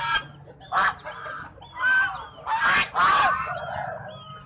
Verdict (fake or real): real